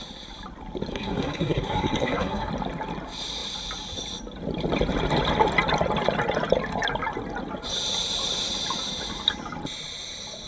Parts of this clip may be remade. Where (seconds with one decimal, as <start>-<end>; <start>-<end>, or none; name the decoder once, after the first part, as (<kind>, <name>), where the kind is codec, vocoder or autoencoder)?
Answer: 0.9-2.5 (codec, SNAC)